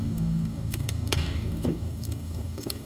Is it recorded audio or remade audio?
remade